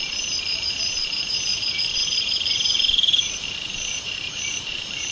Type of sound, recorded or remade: remade